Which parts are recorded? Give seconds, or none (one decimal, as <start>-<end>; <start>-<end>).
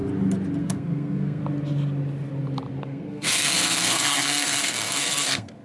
0.0-0.6; 1.4-2.8